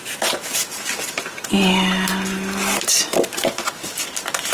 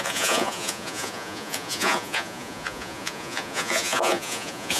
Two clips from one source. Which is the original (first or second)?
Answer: first